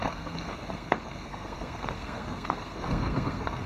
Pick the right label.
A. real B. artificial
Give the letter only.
B